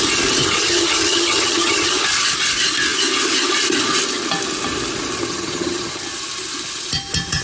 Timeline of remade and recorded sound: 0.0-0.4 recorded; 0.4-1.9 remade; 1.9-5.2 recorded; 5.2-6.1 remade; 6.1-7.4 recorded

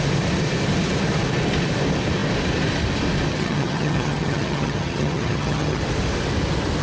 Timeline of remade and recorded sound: 0.0-3.3 recorded; 3.3-5.8 remade; 5.8-6.8 recorded